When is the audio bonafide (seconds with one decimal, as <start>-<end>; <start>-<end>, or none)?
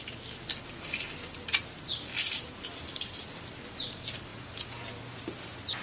0.0-4.3; 5.2-5.8